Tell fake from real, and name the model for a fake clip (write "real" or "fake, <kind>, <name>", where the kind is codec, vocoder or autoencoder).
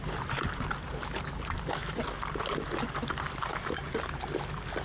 real